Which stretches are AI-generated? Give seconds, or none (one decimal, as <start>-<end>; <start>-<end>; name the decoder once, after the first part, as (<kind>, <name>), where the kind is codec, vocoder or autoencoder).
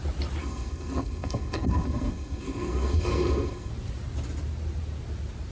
0.4-3.7 (codec, SNAC)